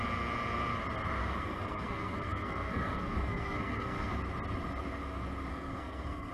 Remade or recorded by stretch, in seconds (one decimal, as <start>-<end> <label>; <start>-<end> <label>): 0.0-1.2 recorded; 1.2-4.1 remade; 4.1-5.5 recorded; 5.5-6.3 remade